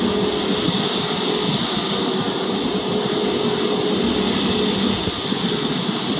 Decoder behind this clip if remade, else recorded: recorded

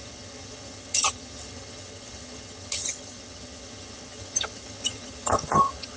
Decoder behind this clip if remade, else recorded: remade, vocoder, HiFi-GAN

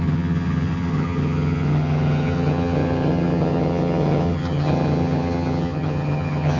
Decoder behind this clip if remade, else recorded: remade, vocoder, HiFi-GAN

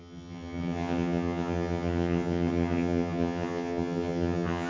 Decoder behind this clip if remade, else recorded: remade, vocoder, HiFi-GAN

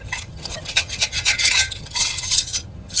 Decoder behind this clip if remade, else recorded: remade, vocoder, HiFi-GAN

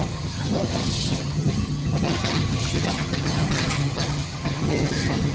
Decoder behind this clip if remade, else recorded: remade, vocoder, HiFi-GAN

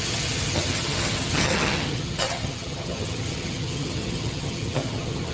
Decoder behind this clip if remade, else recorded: remade, vocoder, HiFi-GAN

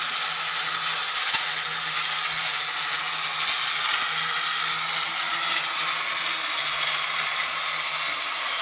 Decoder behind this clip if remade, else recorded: recorded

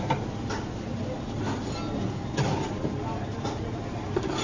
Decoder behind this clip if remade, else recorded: recorded